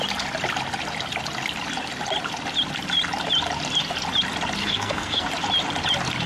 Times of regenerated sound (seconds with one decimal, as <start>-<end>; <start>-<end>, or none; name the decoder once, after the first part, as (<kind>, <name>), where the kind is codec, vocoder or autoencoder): 4.6-5.3 (codec, SNAC)